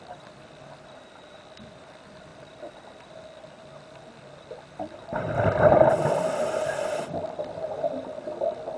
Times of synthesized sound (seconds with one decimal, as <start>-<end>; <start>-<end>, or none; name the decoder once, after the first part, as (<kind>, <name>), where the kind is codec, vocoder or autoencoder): none